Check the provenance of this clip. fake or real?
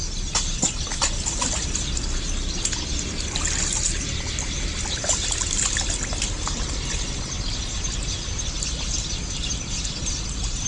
real